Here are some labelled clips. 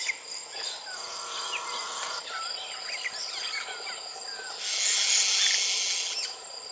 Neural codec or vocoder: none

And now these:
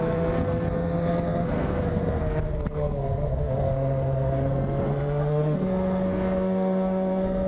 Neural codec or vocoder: codec, SNAC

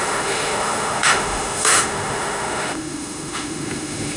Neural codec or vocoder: autoencoder, DAC-VAE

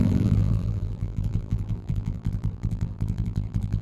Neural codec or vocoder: vocoder, BigVGAN v2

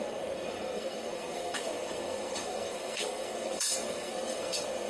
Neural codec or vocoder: codec, SNAC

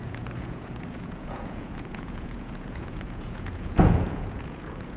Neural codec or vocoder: vocoder, Vocos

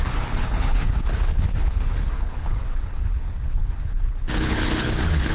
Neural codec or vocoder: codec, HILCodec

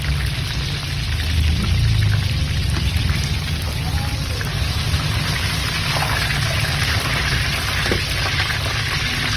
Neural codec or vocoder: none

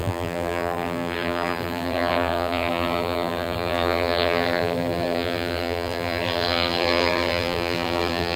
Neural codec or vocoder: vocoder, BigVGAN v2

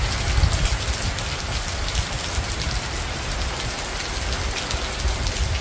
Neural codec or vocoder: none